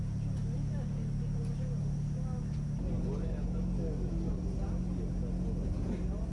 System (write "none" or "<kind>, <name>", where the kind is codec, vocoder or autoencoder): none